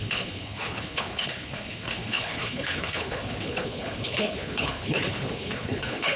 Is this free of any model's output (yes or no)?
no